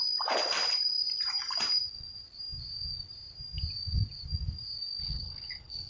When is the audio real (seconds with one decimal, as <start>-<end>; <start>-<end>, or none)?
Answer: 0.0-5.0